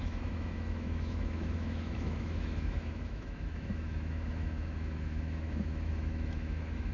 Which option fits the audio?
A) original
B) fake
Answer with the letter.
B